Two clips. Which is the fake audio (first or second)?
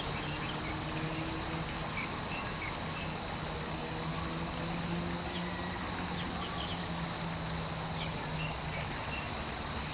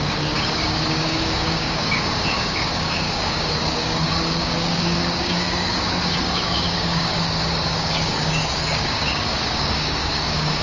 second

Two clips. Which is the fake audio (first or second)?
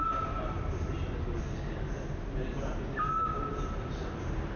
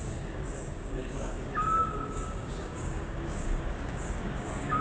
second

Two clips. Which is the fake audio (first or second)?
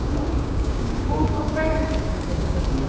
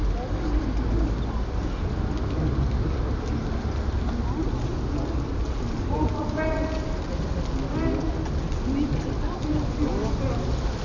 first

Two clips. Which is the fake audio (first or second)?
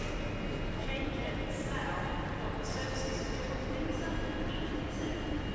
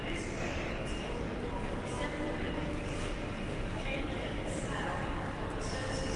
second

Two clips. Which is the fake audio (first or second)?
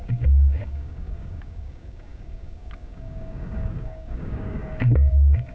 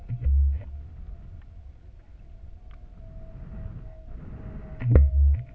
first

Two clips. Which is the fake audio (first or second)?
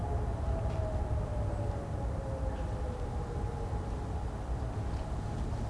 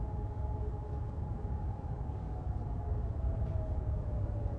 second